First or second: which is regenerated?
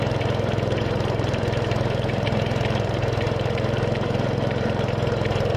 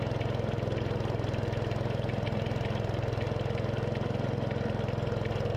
first